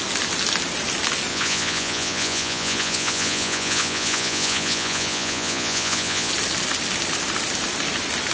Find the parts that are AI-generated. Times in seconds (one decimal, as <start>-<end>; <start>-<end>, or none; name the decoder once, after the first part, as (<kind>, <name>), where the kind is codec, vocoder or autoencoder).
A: 1.3-6.3 (vocoder, Vocos)

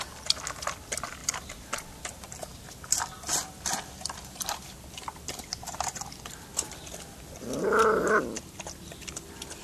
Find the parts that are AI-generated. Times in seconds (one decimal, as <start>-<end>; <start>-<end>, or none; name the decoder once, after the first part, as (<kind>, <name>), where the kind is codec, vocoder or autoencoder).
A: none

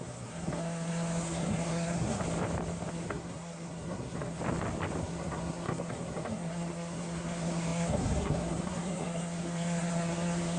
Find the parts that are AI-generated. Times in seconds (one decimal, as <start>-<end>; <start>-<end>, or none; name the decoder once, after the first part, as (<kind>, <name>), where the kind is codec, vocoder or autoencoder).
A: 0.0-2.2 (codec, SNAC); 2.9-4.4; 5.0-10.6

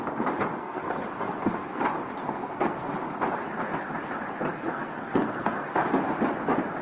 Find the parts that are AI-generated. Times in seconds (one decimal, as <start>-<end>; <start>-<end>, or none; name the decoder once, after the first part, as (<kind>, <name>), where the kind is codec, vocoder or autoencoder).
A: 0.6-1.8 (codec, SNAC); 2.2-2.9; 4.5-5.8